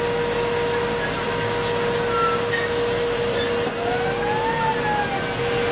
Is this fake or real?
real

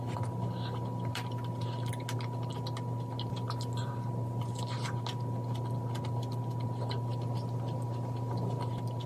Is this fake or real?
real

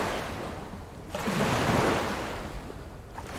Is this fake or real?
real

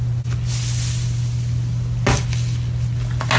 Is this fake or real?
real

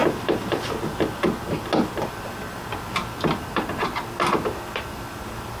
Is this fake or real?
real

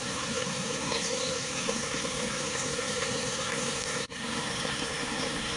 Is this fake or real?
fake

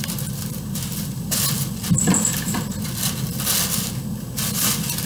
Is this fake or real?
real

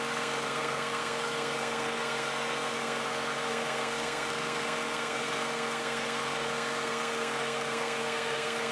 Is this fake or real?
fake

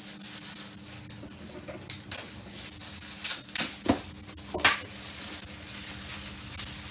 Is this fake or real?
real